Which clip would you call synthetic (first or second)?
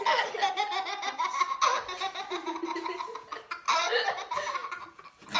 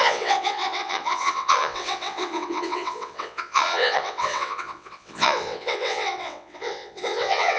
second